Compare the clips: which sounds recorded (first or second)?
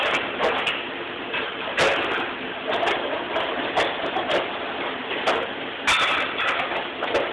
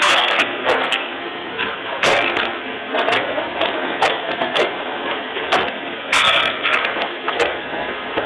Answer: first